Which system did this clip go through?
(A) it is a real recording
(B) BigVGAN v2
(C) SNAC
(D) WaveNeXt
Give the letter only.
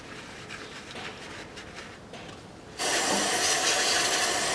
A